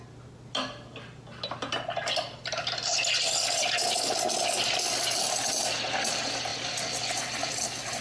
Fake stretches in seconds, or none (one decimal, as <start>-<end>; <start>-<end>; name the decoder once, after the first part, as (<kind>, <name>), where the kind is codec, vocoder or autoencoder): none